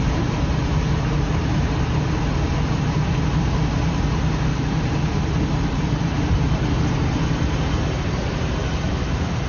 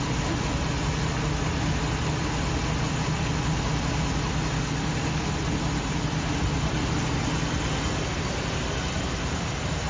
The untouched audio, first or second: second